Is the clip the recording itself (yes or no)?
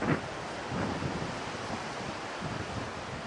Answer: yes